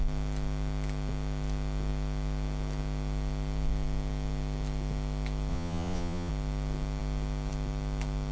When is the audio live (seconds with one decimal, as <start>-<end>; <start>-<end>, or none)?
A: 0.0-5.5; 6.3-8.3